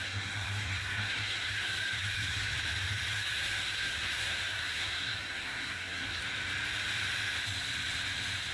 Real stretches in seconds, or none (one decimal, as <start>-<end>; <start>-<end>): 2.5-3.1; 6.2-8.5

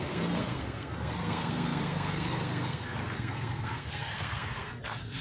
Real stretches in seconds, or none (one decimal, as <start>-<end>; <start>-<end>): none

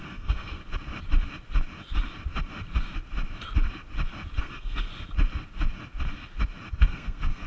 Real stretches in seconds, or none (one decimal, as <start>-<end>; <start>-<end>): 0.6-4.4; 4.9-6.7

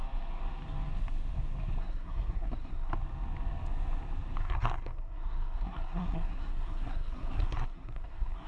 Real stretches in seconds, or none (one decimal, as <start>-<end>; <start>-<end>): 0.0-1.8; 2.9-4.4

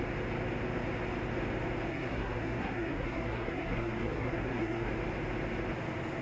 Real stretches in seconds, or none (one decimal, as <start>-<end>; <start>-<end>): 0.0-1.9; 4.9-6.2

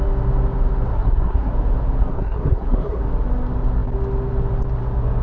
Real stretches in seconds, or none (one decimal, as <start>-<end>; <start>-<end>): 0.0-0.9; 1.5-2.0; 3.0-5.2

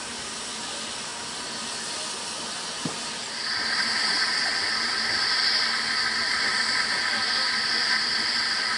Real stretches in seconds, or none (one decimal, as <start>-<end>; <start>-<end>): 0.0-8.8